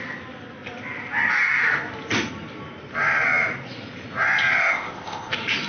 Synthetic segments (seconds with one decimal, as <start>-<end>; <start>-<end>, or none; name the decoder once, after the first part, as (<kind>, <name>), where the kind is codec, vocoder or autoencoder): 4.6-5.3 (codec, ZipCodec)